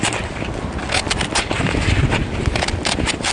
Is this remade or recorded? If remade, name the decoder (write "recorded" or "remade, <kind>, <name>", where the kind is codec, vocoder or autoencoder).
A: recorded